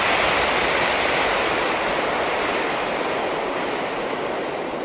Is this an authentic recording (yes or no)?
yes